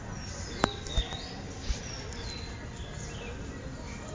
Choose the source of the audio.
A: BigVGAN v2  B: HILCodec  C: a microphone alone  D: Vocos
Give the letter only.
C